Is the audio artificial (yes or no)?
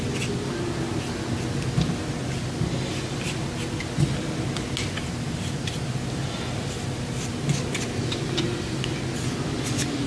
no